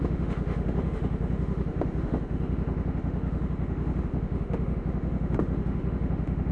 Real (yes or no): no